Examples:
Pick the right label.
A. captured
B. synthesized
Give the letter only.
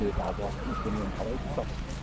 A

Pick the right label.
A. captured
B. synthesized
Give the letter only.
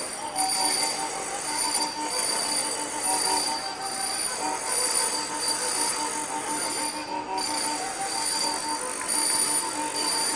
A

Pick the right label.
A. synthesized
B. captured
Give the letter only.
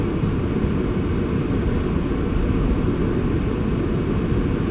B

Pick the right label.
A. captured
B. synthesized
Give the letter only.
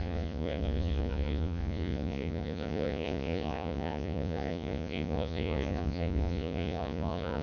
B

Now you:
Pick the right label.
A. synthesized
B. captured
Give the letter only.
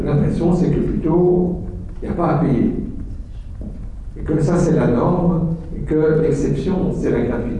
B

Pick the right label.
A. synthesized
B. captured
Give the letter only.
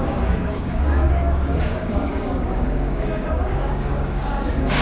A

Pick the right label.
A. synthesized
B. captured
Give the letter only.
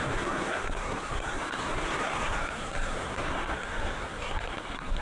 A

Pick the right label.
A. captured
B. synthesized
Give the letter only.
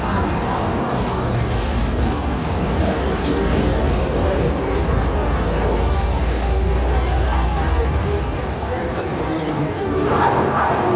B